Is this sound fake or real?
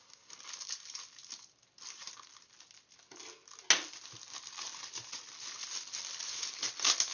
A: real